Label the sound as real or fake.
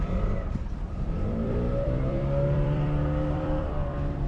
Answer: fake